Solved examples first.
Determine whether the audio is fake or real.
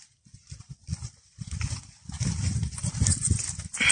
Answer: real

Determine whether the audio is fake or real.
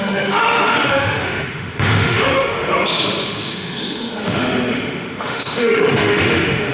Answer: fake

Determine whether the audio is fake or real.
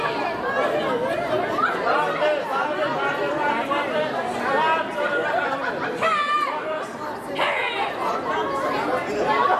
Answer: real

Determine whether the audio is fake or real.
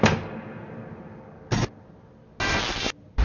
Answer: real